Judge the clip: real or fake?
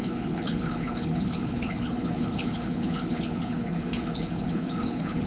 fake